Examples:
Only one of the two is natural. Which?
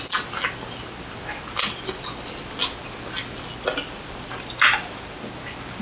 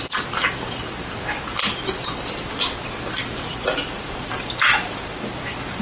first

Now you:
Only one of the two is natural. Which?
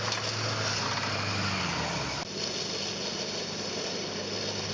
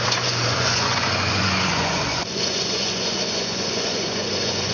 first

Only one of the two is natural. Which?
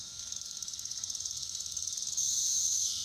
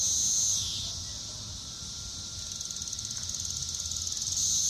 second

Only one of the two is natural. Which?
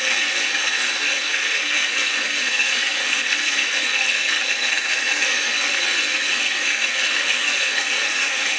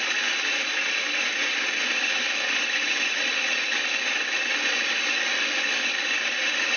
second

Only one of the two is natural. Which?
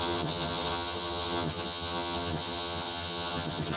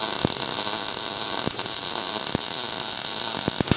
second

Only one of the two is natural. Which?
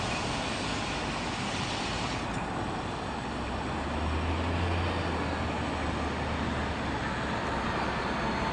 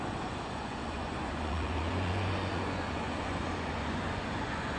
first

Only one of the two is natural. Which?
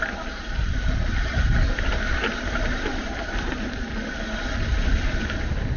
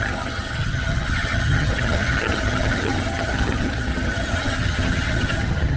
first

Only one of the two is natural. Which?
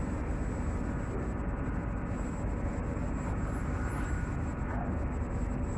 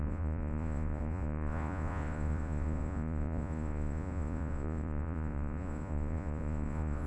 first